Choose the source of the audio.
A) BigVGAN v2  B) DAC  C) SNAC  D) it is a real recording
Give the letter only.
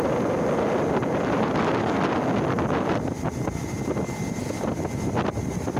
D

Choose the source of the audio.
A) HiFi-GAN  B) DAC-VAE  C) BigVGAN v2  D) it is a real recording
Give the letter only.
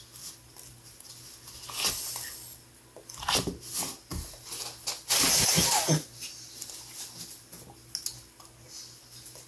D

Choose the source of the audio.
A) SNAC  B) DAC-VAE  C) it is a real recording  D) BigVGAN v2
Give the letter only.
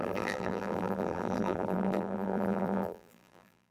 D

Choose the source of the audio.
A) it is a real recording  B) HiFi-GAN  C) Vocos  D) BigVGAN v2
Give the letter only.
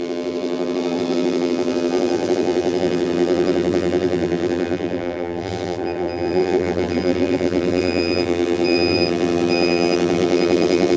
D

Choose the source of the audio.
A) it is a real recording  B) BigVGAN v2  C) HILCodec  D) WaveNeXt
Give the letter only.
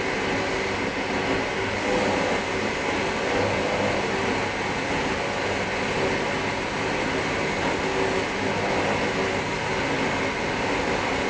A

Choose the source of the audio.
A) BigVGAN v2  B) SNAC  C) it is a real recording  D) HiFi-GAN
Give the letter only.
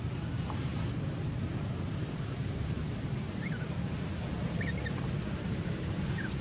A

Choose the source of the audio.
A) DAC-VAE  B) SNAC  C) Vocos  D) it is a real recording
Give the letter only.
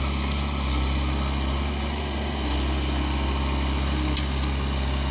D